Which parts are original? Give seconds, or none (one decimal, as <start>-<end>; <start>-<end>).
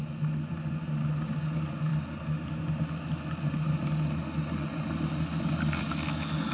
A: 0.0-6.5